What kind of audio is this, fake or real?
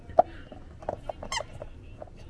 real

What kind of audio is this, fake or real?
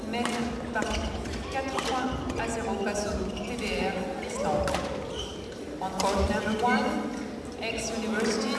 real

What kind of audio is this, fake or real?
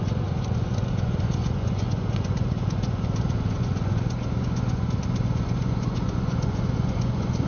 fake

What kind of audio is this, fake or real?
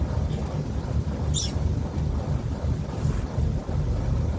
real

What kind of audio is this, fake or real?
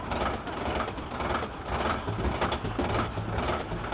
real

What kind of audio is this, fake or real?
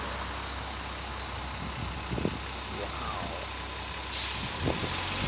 real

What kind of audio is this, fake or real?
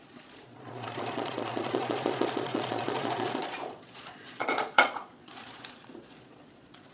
fake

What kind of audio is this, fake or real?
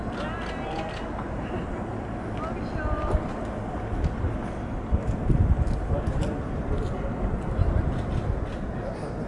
real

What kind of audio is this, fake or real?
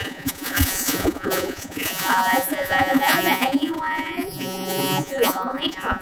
fake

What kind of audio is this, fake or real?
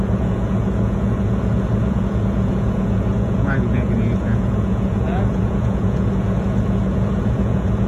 fake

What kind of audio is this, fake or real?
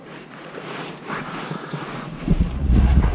fake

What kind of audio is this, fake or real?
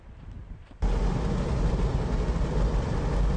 real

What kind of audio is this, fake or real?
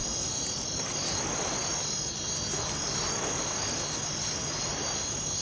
real